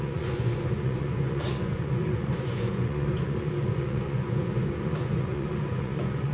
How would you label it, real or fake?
fake